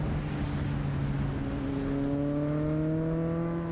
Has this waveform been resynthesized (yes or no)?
no